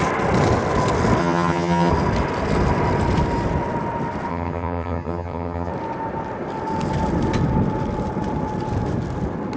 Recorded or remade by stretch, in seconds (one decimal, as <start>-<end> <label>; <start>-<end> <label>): 0.0-1.2 recorded; 1.2-1.9 remade; 1.9-4.3 recorded; 4.3-5.7 remade; 5.7-9.6 recorded